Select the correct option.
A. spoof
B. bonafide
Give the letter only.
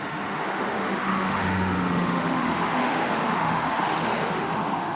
A